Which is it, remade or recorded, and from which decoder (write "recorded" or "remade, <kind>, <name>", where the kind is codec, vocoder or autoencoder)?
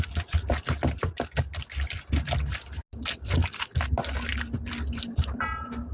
recorded